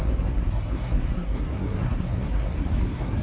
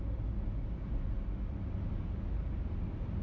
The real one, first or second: second